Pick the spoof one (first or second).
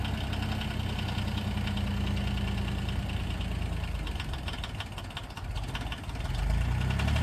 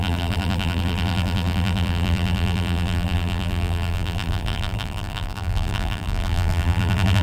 second